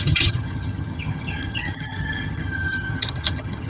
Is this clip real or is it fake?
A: fake